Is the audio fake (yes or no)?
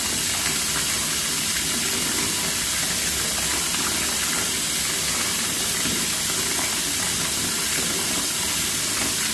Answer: no